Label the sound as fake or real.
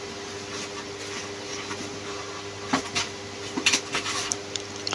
real